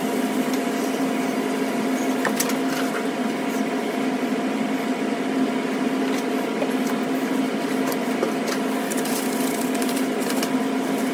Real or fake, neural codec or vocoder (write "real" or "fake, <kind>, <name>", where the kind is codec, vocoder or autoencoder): real